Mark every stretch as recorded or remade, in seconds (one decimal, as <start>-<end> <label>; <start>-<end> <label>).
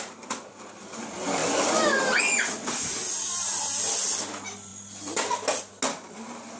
0.0-6.6 recorded